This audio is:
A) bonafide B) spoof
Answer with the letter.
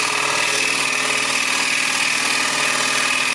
A